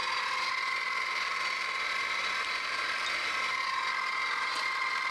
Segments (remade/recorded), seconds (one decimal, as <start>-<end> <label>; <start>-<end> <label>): 0.0-5.1 recorded